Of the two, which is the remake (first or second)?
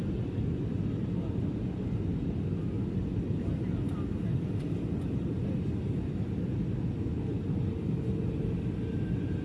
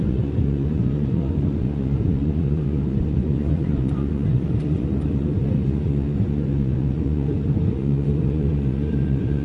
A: second